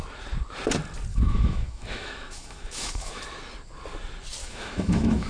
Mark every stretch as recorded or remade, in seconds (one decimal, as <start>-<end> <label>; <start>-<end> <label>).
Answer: 0.0-1.1 recorded; 1.1-3.2 remade; 3.2-4.4 recorded; 4.4-5.3 remade